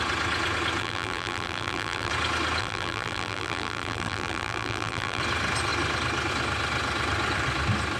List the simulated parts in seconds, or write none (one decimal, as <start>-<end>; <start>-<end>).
0.8-2.1; 2.6-5.2